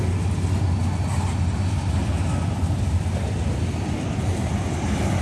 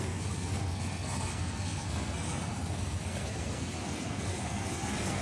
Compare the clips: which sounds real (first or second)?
first